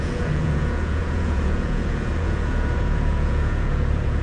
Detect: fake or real fake